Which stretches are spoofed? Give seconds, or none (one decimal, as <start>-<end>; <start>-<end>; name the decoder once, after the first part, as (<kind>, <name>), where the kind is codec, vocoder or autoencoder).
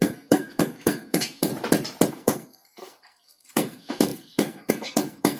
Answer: 0.0-1.5 (codec, SNAC); 2.1-5.4